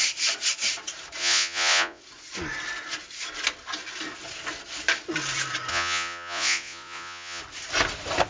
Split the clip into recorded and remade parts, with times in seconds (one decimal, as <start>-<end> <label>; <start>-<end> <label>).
0.0-1.2 recorded; 1.2-2.0 remade; 2.0-5.7 recorded; 5.7-7.4 remade; 7.4-8.3 recorded

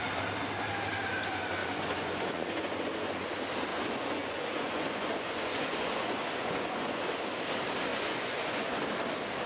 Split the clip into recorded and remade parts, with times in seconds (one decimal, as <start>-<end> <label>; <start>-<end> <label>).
0.0-1.6 recorded; 1.6-3.3 remade; 3.3-3.7 recorded; 3.7-7.1 remade; 7.1-7.9 recorded; 7.9-8.8 remade; 8.8-9.5 recorded

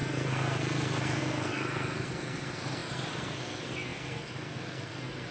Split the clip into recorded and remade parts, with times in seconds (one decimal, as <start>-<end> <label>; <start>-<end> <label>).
0.0-5.3 remade

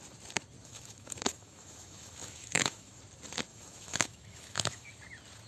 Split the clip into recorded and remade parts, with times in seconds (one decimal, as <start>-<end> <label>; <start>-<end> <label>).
0.0-0.6 recorded; 0.6-3.0 remade; 3.0-3.5 recorded; 3.5-4.9 remade; 4.9-5.5 recorded

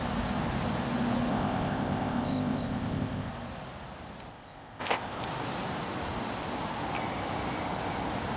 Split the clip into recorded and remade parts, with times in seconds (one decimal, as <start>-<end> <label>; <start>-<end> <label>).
0.0-1.3 recorded; 1.3-3.3 remade; 3.3-4.3 recorded; 4.3-5.2 remade; 5.2-8.4 recorded

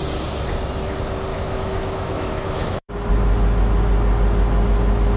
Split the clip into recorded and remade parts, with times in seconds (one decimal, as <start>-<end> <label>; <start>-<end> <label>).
0.0-1.3 recorded; 1.3-2.9 remade; 2.9-5.2 recorded